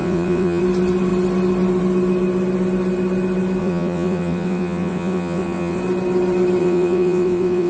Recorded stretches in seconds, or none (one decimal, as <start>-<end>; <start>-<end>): 0.6-3.6; 5.8-6.6